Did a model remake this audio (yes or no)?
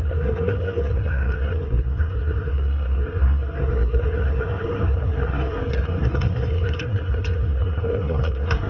yes